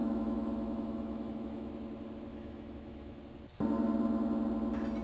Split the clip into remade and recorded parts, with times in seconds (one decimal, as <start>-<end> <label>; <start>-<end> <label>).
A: 0.0-1.7 remade; 1.7-2.3 recorded; 2.3-3.2 remade; 3.2-5.0 recorded